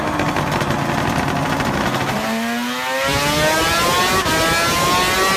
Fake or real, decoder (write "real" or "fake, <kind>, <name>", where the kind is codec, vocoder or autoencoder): real